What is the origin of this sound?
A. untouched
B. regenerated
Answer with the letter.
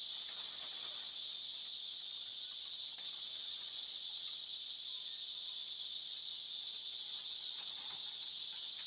A